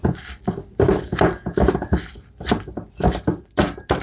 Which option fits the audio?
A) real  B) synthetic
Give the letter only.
A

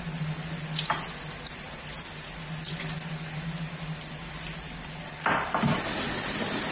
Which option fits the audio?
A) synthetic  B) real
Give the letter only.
B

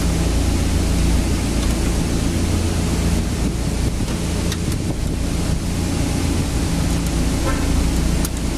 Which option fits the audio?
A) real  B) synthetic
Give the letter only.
A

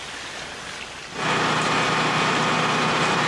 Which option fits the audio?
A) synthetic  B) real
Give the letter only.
B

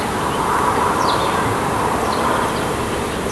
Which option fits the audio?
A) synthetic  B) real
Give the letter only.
B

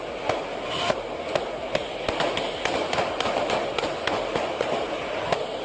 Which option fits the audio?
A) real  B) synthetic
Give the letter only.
A